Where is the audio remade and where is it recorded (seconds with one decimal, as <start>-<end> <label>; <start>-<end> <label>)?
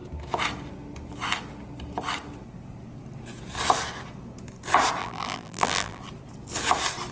0.0-5.0 recorded; 5.0-6.0 remade; 6.0-7.1 recorded